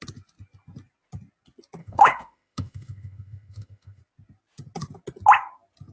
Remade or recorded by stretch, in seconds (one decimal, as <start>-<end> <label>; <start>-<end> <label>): 0.0-1.8 recorded; 1.8-4.0 remade; 4.0-5.9 recorded